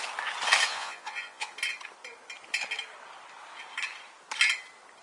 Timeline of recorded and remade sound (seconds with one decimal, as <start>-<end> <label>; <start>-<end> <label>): 0.0-0.7 recorded; 0.7-1.5 remade; 1.5-5.0 recorded